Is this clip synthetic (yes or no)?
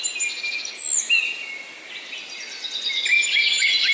no